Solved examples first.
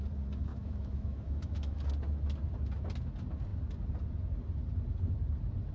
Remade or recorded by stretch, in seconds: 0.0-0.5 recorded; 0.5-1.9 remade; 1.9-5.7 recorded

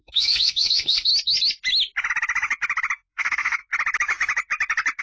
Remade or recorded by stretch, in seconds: 0.0-1.1 remade; 1.1-3.1 recorded; 3.1-3.6 remade; 3.6-5.0 recorded